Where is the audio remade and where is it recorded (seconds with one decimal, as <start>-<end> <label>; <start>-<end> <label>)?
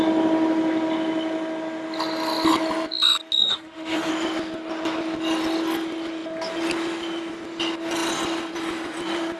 0.0-3.4 recorded; 3.4-4.1 remade; 4.1-9.4 recorded